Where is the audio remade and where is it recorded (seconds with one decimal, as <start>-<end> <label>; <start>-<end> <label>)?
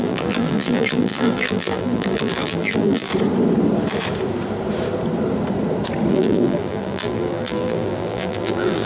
0.0-3.1 remade; 3.1-6.1 recorded; 6.1-8.9 remade